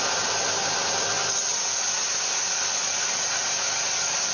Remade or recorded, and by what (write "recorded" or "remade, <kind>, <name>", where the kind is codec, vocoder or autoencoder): recorded